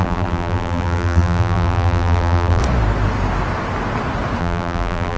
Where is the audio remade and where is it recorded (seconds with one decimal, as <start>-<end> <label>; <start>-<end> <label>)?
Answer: 0.0-2.6 remade; 2.6-4.4 recorded; 4.4-5.2 remade

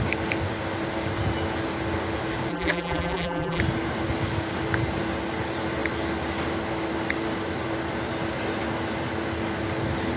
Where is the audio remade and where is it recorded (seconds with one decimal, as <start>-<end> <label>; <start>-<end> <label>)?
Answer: 0.0-2.5 recorded; 2.5-3.6 remade; 3.6-10.2 recorded